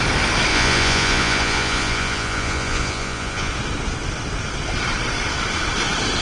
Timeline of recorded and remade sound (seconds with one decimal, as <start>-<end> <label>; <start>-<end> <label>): 0.0-0.5 recorded; 0.5-3.5 remade; 3.5-6.2 recorded